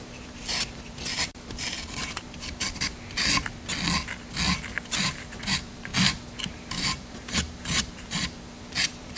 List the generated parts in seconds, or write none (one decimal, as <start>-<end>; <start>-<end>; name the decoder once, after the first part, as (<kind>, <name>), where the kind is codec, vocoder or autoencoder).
0.0-2.9 (vocoder, BigVGAN v2); 5.0-5.9; 6.4-9.2